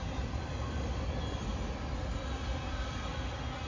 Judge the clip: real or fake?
real